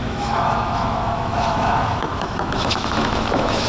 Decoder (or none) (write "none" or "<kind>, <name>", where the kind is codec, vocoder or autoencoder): autoencoder, DAC-VAE